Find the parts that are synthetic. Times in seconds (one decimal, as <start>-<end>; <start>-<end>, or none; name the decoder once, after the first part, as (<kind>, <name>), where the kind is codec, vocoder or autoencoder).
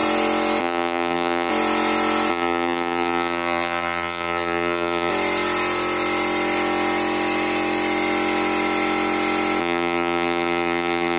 0.6-1.5 (vocoder, BigVGAN v2); 2.3-5.1; 9.6-11.2